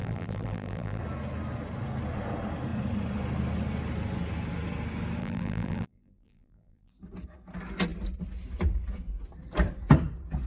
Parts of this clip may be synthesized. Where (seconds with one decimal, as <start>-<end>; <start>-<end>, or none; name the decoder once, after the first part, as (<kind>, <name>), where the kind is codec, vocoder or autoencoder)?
0.0-1.0 (vocoder, BigVGAN v2); 5.2-6.9